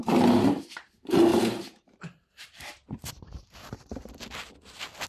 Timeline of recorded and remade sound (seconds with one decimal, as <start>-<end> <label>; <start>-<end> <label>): 0.0-0.8 remade; 0.8-1.3 recorded; 1.3-4.1 remade; 4.1-5.1 recorded